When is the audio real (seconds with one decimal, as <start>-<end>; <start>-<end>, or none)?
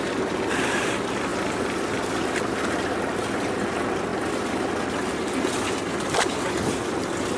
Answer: 0.0-7.4